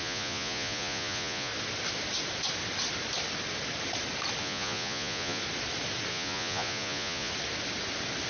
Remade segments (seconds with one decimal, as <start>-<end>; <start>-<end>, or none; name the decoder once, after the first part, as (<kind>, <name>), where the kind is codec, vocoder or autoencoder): 0.0-1.5 (vocoder, Vocos); 4.4-5.4; 6.1-7.3